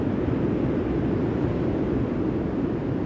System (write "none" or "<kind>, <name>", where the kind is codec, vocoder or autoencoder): none